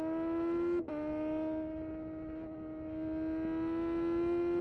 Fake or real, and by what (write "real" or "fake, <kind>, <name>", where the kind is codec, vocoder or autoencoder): real